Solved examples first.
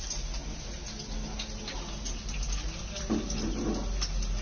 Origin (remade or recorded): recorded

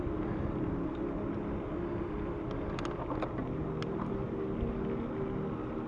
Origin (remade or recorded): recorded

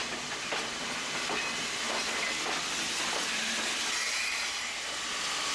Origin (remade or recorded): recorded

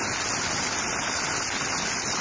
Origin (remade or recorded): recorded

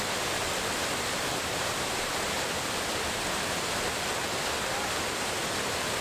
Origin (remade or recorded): recorded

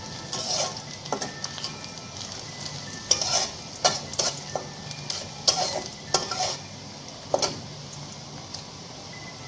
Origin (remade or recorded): recorded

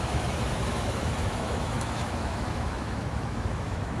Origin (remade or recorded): remade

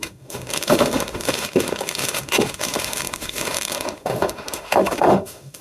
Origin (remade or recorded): remade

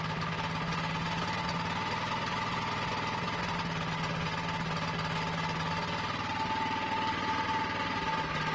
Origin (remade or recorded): recorded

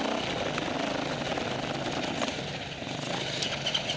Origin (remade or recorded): recorded